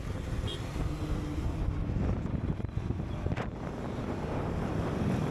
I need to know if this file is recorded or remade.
recorded